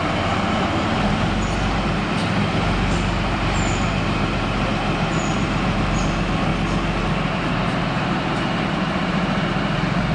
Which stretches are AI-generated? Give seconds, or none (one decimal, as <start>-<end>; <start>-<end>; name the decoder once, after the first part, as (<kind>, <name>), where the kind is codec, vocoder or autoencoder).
0.0-6.5 (vocoder, BigVGAN v2); 7.0-10.1